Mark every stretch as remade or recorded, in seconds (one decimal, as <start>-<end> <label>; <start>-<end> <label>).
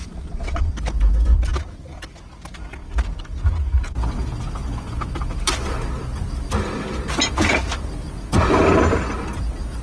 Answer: 0.0-0.7 remade; 0.7-9.8 recorded